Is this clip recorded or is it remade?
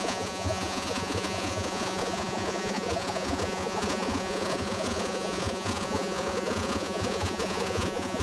remade